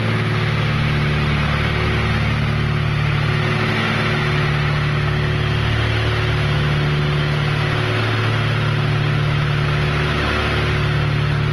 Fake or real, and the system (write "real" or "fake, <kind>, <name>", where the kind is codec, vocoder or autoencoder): real